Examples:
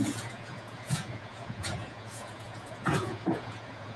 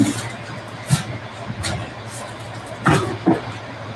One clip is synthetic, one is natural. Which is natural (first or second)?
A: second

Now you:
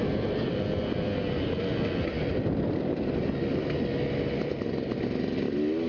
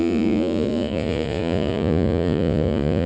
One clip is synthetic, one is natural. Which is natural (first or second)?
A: first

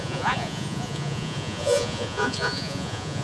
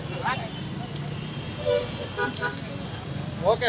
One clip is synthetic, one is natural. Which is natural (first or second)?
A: second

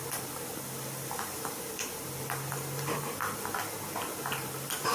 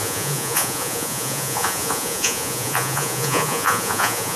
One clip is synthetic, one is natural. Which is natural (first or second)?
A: first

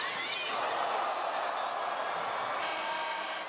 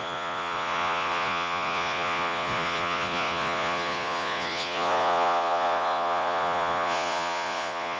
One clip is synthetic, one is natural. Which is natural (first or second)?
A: first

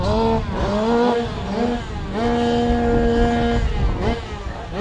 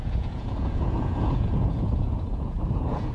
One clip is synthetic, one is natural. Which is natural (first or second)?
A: first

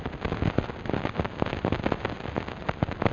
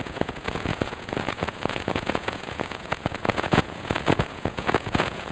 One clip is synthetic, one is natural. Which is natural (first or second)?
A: first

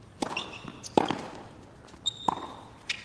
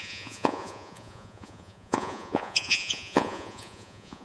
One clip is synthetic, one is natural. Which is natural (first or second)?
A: first